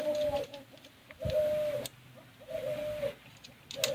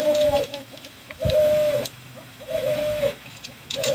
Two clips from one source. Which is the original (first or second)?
first